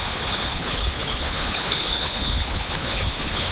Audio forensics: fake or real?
fake